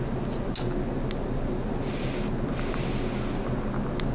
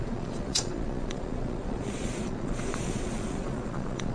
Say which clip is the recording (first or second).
first